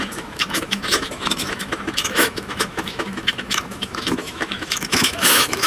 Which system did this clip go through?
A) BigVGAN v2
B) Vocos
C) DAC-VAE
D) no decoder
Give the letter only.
C